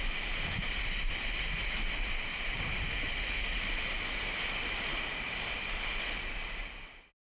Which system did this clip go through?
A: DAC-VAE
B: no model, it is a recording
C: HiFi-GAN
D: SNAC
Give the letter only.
B